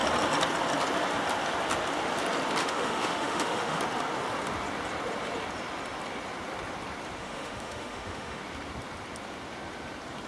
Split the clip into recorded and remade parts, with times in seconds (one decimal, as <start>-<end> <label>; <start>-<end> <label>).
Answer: 0.0-2.6 recorded; 2.6-3.8 remade; 3.8-7.2 recorded; 7.2-8.4 remade; 8.4-10.3 recorded